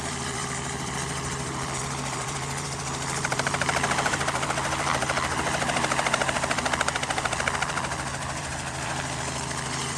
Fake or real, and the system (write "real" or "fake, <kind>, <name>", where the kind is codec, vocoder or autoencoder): fake, vocoder, BigVGAN v2